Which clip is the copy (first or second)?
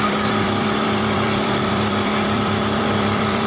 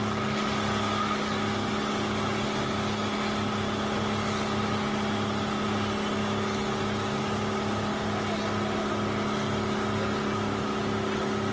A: first